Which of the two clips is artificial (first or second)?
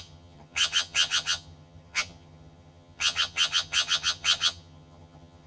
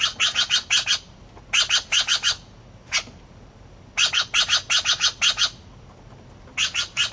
first